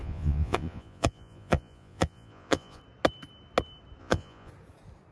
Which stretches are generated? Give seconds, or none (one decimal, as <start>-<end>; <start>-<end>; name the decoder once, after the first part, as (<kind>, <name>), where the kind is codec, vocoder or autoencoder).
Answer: 0.0-2.8 (vocoder, Vocos); 4.0-4.5